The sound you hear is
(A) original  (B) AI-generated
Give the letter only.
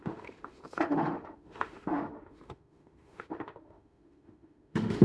B